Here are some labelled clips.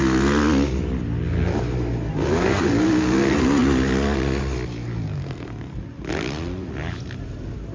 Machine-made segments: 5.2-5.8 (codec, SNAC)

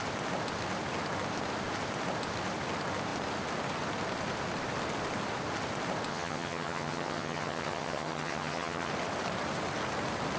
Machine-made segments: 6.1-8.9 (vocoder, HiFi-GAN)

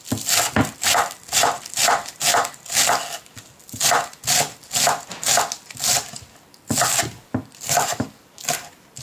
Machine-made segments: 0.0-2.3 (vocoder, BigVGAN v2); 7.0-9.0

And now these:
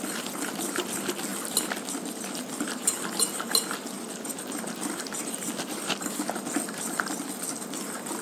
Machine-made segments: none